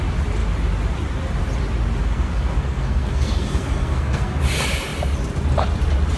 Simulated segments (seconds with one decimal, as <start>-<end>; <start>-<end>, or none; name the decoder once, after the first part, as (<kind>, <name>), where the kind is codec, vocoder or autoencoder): 2.0-4.4 (codec, SNAC)